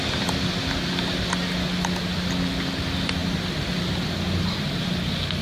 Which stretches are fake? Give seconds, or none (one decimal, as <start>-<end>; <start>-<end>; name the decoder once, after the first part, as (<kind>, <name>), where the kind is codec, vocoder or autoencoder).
none